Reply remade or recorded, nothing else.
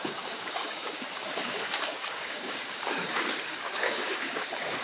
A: remade